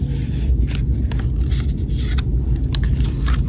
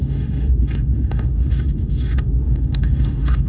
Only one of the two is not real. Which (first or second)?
second